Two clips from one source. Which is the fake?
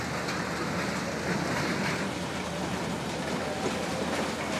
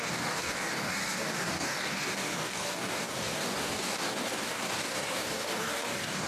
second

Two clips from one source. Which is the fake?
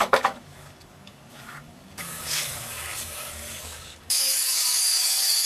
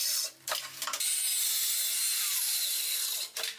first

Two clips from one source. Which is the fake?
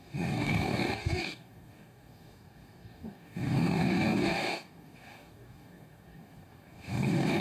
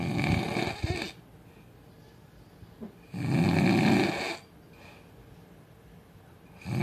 first